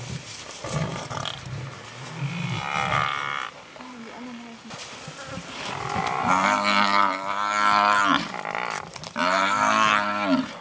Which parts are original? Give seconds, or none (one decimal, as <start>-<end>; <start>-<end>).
0.0-10.6